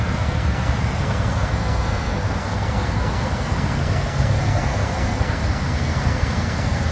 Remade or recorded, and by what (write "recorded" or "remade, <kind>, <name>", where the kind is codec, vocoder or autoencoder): remade, codec, SNAC